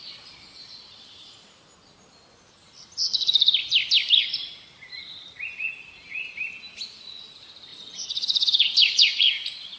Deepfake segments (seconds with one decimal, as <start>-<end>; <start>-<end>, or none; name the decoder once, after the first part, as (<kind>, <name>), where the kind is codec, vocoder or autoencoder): 7.7-9.8 (vocoder, Vocos)